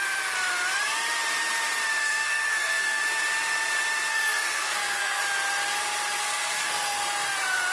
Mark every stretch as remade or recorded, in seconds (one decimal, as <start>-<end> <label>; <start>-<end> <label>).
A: 0.0-2.0 recorded; 2.0-3.0 remade; 3.0-4.1 recorded; 4.1-5.2 remade; 5.2-6.2 recorded; 6.2-7.0 remade; 7.0-7.7 recorded